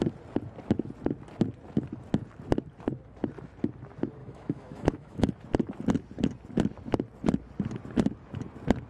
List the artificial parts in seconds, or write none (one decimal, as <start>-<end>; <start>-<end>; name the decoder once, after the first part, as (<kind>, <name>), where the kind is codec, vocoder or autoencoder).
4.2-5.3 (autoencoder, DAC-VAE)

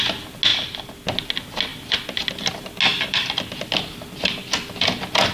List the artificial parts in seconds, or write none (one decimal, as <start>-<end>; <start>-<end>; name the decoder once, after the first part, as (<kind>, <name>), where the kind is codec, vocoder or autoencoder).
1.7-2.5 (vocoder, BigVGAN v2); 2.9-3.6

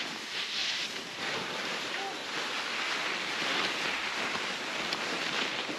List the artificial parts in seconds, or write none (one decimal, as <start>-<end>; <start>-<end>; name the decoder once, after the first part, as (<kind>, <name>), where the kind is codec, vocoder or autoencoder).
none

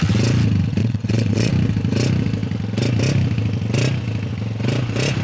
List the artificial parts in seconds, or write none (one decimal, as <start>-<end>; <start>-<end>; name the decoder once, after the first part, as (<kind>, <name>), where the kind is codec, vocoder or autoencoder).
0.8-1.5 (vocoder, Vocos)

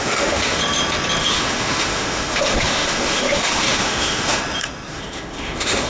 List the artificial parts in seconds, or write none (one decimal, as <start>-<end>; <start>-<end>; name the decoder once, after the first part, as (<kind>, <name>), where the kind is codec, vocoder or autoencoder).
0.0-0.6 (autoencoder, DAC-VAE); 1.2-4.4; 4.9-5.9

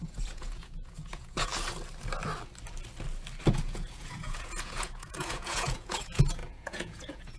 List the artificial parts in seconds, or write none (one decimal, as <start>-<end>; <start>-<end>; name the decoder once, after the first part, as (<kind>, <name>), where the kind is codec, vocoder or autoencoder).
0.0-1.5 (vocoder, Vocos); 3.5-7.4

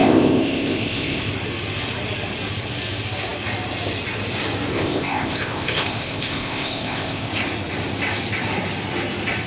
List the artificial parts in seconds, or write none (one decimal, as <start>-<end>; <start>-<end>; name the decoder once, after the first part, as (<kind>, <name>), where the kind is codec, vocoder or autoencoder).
0.0-1.3 (codec, ZipCodec); 4.7-7.3